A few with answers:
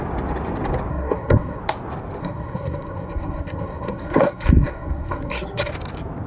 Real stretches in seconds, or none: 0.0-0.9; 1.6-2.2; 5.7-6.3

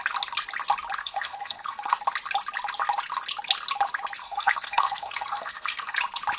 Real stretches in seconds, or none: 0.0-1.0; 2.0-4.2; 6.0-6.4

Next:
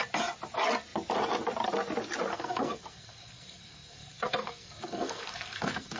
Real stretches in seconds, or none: 0.0-2.3

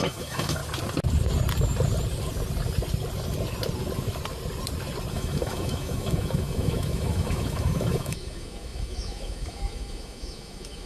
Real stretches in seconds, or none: 0.6-5.1

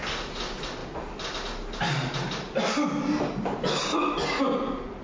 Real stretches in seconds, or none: 0.0-5.0